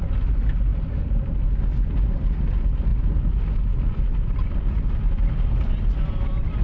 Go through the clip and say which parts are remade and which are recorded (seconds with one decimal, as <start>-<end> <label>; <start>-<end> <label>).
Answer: 0.0-6.6 recorded